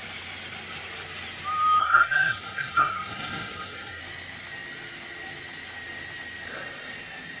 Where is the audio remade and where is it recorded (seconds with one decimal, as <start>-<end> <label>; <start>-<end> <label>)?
0.0-1.8 recorded; 1.8-4.0 remade; 4.0-7.4 recorded